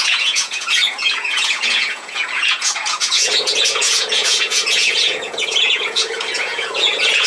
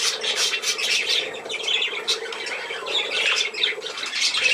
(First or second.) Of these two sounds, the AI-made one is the first